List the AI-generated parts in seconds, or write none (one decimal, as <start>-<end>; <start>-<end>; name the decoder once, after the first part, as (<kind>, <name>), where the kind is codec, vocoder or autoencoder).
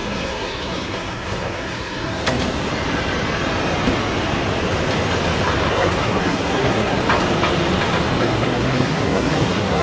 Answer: 0.0-2.2 (codec, SNAC); 5.7-7.0; 8.2-9.8